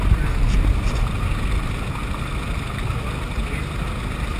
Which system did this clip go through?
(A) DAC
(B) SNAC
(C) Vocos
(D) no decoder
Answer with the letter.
D